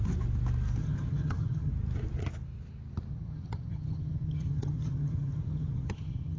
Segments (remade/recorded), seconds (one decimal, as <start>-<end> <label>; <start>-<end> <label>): 0.0-0.8 recorded; 0.8-1.7 remade; 1.7-3.1 recorded; 3.1-6.4 remade